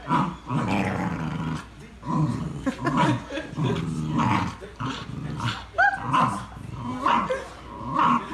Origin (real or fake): real